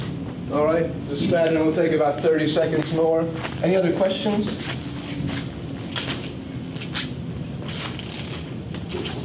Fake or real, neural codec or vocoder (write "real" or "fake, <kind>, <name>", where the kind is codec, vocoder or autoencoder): real